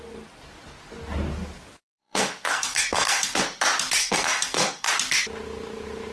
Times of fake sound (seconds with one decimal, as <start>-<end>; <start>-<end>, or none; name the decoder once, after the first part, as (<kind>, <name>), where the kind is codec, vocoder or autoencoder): 2.0-3.4 (codec, SNAC); 4.0-4.9